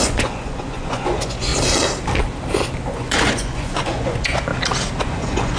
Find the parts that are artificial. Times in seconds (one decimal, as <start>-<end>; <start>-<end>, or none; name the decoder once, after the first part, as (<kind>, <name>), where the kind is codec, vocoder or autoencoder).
0.0-1.5 (vocoder, Vocos); 2.9-4.5; 5.0-5.6